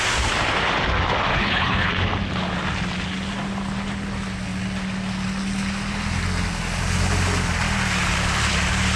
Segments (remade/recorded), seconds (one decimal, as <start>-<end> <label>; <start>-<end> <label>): 0.0-1.3 recorded; 1.3-1.9 remade; 1.9-9.0 recorded